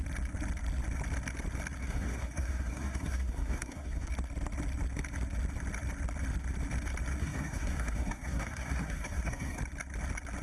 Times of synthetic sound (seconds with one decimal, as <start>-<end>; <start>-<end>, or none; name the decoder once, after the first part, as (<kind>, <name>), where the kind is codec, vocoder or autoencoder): 1.8-4.1 (codec, SNAC); 7.2-9.6